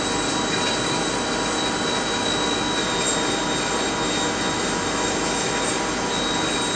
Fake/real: real